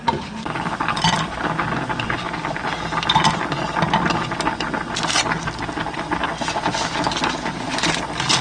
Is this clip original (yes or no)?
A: yes